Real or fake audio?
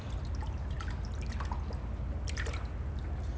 real